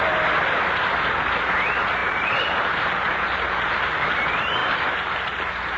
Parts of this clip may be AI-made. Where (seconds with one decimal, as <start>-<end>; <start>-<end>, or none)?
2.0-3.7; 4.6-5.8